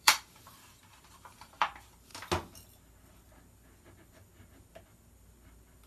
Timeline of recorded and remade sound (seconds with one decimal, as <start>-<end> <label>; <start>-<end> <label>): 0.0-2.1 remade; 2.1-5.9 recorded